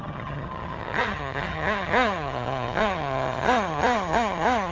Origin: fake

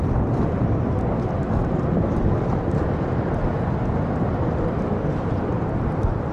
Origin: real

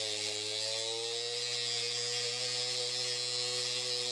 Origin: real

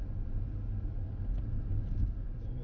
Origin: real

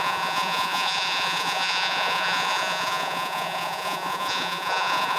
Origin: fake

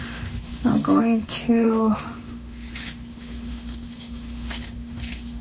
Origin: fake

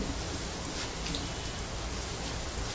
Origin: real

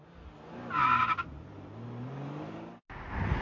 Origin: real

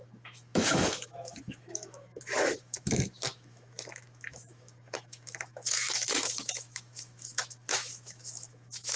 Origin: fake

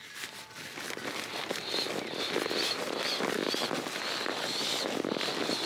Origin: real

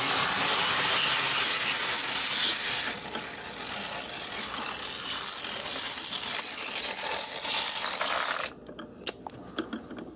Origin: real